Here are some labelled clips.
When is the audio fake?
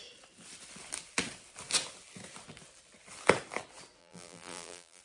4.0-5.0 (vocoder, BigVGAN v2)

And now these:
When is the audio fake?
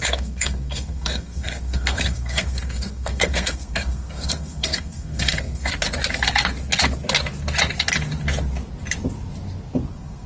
0.0-5.7 (codec, SNAC); 9.9-10.3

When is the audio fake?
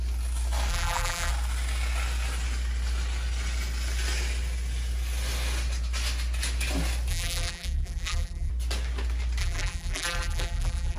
0.7-1.3 (vocoder, BigVGAN v2); 7.1-8.5; 9.4-11.0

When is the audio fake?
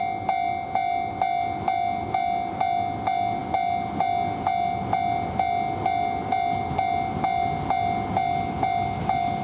none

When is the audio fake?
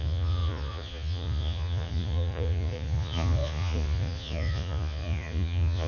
0.0-5.9 (vocoder, Vocos)